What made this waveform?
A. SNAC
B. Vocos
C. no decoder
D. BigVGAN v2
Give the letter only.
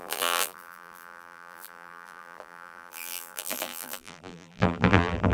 D